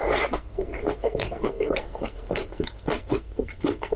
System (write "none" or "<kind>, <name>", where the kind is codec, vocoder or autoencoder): codec, SNAC